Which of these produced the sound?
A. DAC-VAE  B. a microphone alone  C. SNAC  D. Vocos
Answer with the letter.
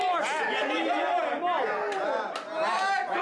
B